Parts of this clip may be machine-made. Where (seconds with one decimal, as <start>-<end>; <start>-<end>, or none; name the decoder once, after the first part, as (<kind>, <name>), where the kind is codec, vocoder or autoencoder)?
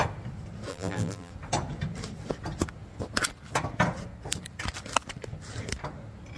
0.7-1.3 (vocoder, BigVGAN v2)